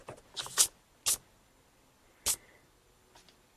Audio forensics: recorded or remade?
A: recorded